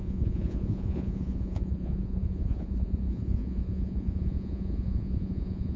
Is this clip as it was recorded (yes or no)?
no